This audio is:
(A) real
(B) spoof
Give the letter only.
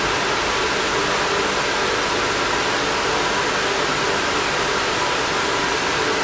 A